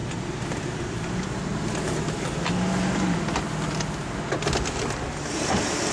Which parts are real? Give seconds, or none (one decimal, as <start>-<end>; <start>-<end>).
0.0-5.9